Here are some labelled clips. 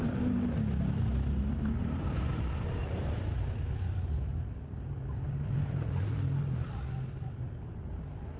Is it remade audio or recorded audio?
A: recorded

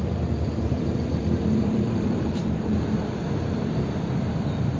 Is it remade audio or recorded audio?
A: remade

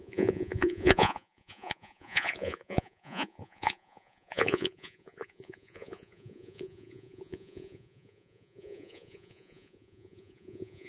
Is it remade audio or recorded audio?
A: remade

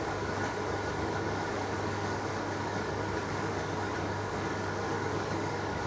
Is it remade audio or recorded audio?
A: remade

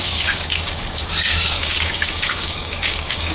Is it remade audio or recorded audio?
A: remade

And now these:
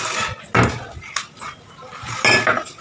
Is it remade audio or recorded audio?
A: recorded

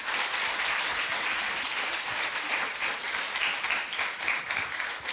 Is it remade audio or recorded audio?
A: recorded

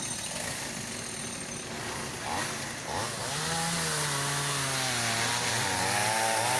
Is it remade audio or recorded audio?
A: recorded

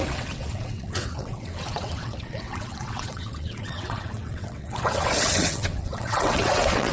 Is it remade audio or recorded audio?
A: remade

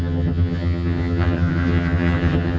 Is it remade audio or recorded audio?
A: remade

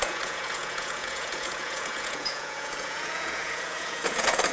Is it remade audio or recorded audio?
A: remade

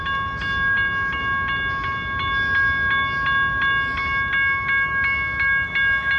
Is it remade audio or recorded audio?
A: recorded